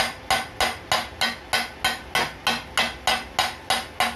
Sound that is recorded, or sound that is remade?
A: recorded